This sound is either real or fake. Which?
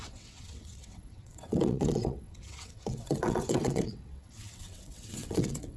fake